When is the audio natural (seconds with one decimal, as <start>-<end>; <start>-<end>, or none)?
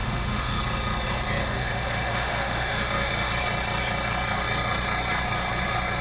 0.6-1.4; 3.3-6.0